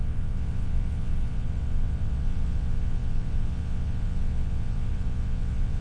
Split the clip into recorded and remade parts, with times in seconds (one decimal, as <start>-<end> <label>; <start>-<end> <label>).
0.0-5.8 remade